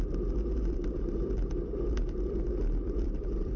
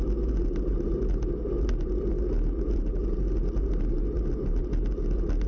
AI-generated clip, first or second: first